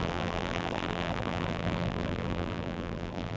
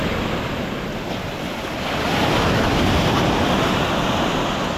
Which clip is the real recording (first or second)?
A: second